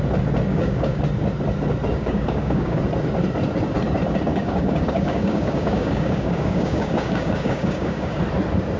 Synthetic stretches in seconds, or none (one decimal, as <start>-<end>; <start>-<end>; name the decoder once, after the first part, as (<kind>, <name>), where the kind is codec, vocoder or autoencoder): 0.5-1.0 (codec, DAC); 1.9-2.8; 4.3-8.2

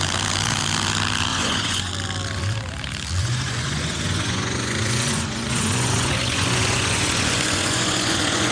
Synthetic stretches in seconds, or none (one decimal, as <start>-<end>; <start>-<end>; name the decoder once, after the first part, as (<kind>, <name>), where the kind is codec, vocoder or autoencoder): 1.3-1.9 (vocoder, Vocos); 3.2-8.5

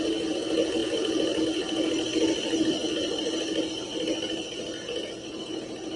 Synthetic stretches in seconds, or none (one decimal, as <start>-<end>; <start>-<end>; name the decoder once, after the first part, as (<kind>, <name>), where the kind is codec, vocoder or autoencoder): none

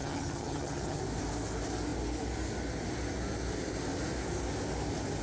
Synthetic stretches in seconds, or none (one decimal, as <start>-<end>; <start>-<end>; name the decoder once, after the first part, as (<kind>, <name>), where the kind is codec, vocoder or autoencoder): 0.0-1.0 (vocoder, HiFi-GAN)

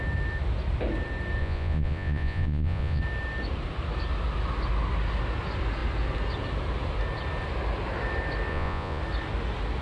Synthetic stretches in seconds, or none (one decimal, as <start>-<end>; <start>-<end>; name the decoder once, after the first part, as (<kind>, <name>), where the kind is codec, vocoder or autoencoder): 1.4-3.0 (vocoder, Vocos); 8.5-9.0

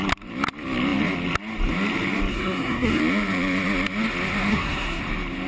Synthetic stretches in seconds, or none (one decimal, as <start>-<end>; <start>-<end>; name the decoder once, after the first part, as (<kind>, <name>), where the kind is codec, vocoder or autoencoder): 2.3-3.0 (codec, SNAC); 4.5-5.0

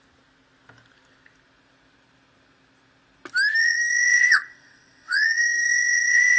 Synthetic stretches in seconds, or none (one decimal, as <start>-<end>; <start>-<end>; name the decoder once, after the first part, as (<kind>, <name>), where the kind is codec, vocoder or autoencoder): 3.6-6.4 (vocoder, WaveNeXt)

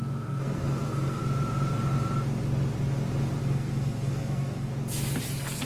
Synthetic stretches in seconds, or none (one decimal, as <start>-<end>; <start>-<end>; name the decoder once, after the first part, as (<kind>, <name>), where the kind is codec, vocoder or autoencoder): 0.0-1.2 (codec, SNAC); 3.4-4.7